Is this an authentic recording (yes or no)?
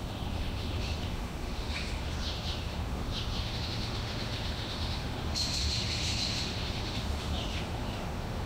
no